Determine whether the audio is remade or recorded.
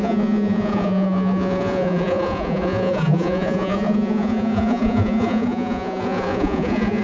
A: remade